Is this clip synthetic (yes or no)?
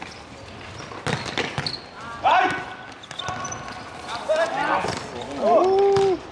no